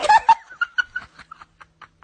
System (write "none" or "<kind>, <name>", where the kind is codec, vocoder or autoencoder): none